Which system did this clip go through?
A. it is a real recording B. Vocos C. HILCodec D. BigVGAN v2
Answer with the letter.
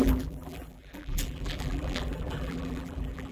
D